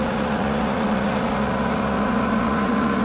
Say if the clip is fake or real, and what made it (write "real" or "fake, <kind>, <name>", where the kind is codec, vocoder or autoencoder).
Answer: fake, vocoder, Vocos